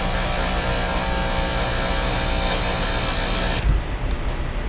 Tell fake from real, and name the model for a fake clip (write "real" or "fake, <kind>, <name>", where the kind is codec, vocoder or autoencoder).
real